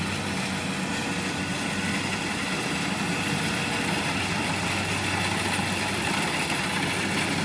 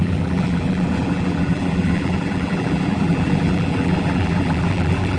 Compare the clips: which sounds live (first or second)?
first